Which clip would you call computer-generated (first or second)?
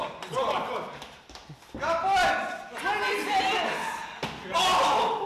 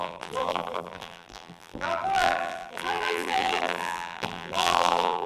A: second